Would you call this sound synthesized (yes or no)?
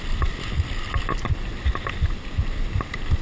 no